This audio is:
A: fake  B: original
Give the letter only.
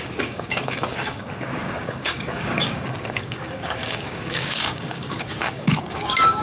A